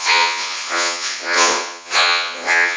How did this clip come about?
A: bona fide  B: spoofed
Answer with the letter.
B